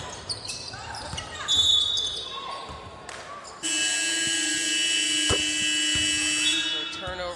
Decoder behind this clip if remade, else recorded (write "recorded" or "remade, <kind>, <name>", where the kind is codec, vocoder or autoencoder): recorded